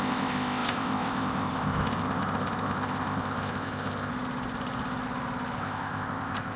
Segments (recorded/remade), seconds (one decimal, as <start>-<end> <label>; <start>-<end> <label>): 0.0-4.1 remade; 4.1-5.6 recorded; 5.6-6.6 remade